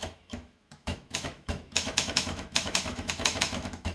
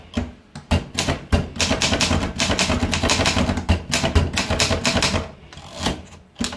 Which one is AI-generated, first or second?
first